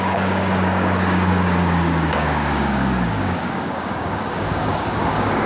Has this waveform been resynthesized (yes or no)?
yes